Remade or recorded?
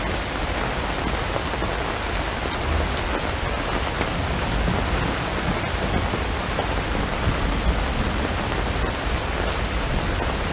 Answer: recorded